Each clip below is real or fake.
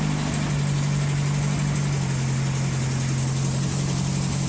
real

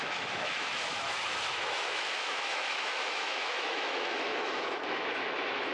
fake